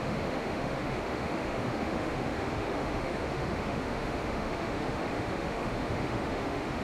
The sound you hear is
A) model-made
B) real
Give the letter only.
A